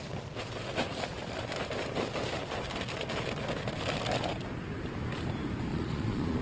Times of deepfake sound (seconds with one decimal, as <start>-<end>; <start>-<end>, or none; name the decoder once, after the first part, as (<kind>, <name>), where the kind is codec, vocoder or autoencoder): 5.7-6.4 (vocoder, Vocos)